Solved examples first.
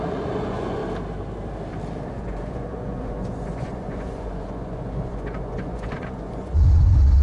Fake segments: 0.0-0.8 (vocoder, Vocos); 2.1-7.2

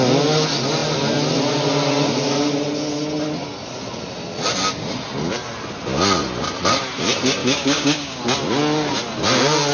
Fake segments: 7.4-8.2 (codec, DAC)